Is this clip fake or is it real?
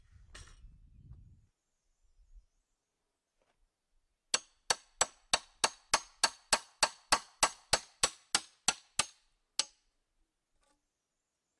real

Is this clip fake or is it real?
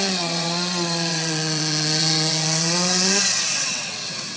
fake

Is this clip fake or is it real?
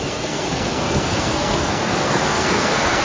fake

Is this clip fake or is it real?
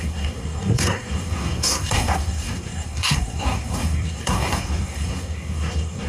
fake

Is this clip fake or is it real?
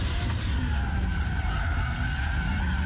real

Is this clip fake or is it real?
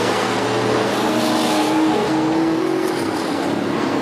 fake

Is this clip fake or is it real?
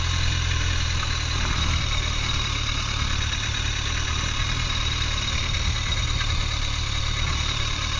real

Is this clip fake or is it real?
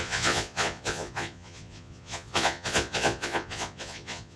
fake